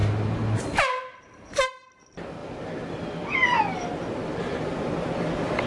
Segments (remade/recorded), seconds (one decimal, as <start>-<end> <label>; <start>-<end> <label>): 0.0-2.4 recorded; 2.4-3.0 remade; 3.0-5.7 recorded